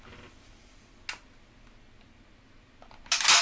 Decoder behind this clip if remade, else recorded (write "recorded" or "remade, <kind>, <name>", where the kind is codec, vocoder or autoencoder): recorded